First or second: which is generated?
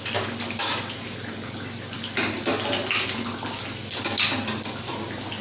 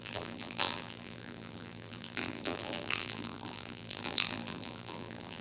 second